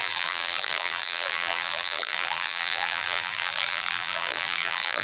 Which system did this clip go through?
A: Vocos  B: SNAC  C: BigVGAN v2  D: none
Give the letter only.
C